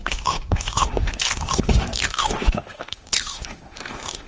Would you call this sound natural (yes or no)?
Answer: no